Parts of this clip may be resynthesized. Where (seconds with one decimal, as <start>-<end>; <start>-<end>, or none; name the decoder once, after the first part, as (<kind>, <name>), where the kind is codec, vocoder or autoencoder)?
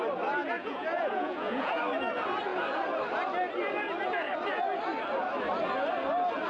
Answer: 0.4-1.8 (vocoder, Vocos)